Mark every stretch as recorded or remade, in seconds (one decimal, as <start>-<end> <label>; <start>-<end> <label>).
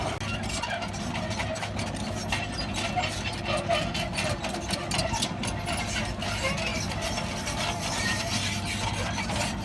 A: 0.0-6.7 recorded; 6.7-8.2 remade; 8.2-9.6 recorded